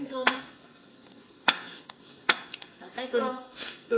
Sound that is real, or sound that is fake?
fake